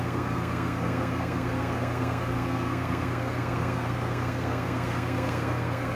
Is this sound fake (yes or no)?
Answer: yes